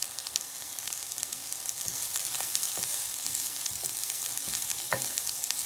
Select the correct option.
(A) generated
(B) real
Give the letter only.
A